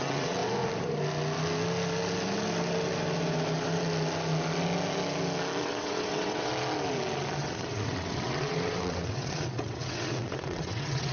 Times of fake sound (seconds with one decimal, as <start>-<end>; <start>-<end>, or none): 0.0-0.4; 5.6-6.5; 7.4-11.1